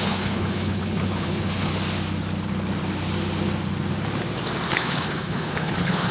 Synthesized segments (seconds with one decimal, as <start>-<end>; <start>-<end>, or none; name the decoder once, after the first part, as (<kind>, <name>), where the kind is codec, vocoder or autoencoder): 0.0-1.7 (codec, HILCodec); 4.7-6.1

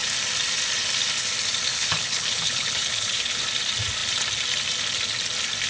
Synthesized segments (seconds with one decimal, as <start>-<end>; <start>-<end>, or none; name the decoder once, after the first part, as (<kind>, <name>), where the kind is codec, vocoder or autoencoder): 1.7-3.4 (codec, HILCodec)

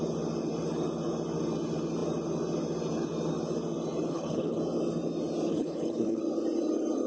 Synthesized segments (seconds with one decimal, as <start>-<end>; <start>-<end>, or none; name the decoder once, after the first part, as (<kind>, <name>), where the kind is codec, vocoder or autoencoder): 4.1-4.6 (codec, HILCodec); 5.5-6.2

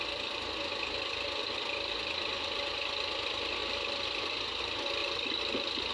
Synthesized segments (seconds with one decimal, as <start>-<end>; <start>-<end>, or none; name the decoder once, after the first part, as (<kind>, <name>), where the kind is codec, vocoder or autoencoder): none

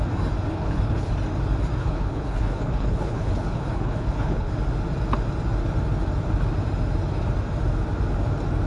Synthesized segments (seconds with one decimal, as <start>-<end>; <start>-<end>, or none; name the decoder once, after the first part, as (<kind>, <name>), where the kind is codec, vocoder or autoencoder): 0.5-1.1 (codec, HILCodec); 1.8-4.5

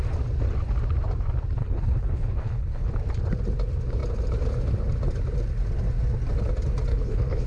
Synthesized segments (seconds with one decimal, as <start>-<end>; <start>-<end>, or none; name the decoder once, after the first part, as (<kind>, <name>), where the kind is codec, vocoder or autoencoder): 1.6-2.9 (codec, HILCodec); 6.9-7.5